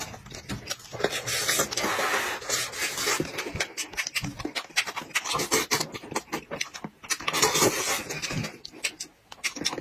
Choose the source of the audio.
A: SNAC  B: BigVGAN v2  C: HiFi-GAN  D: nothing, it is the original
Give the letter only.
D